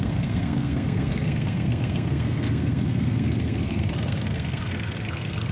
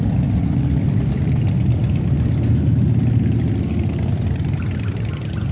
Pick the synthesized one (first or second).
first